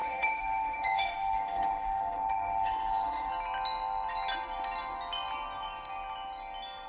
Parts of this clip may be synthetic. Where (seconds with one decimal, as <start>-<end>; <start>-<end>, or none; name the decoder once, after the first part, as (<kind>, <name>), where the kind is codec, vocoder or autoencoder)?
0.0-3.3 (autoencoder, DAC-VAE)